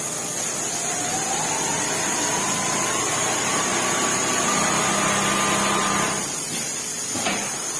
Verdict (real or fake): real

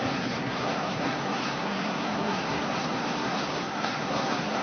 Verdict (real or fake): fake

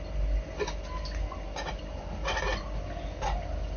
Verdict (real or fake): real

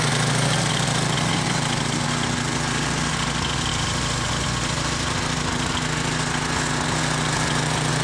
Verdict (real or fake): real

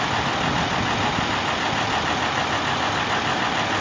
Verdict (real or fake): real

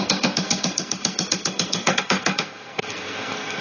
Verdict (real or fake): fake